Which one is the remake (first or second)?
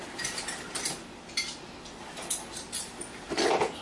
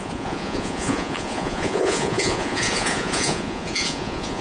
second